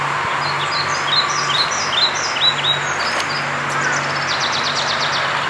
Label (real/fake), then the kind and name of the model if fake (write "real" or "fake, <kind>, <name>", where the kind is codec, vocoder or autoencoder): real